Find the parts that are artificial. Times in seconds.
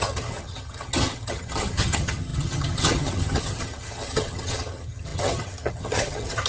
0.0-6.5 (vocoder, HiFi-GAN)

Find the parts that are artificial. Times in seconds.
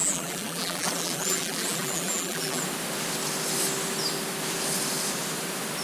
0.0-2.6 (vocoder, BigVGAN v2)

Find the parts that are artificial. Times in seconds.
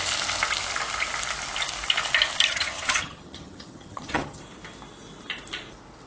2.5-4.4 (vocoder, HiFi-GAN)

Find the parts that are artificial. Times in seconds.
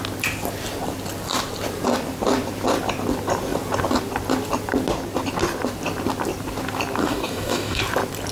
7.0-7.8 (codec, DAC)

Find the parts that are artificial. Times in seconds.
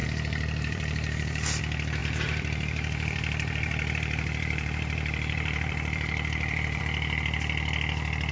0.0-1.6 (vocoder, BigVGAN v2); 2.0-6.8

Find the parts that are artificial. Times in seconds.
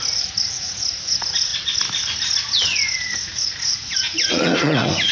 0.0-1.5 (vocoder, Vocos); 2.6-5.1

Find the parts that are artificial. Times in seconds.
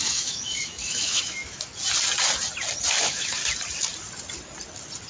0.0-1.7 (autoencoder, DAC-VAE); 3.0-3.4